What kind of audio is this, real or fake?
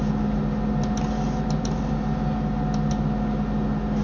real